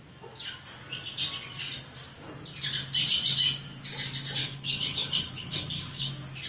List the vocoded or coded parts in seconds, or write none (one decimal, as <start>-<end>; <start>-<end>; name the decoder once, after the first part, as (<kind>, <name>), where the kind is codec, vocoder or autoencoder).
4.4-6.1 (codec, HILCodec)